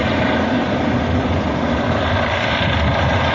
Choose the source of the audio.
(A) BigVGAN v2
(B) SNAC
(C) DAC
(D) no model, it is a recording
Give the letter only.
D